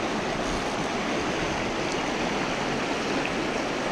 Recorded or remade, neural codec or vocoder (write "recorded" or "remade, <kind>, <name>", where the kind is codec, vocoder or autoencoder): recorded